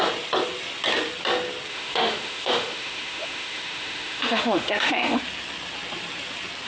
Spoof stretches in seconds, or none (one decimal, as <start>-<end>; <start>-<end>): 1.7-5.2